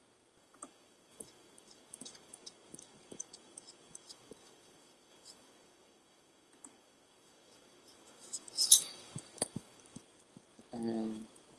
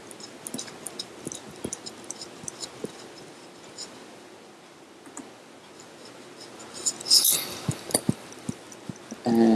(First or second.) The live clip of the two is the second